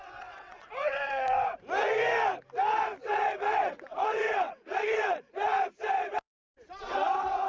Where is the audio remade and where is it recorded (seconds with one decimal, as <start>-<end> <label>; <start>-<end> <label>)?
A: 0.0-1.5 remade; 1.5-3.0 recorded; 3.0-7.5 remade